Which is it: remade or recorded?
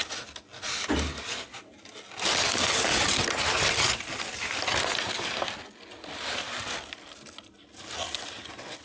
recorded